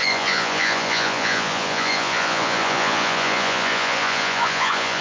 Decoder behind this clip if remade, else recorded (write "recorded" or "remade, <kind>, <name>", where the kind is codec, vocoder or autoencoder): remade, vocoder, Vocos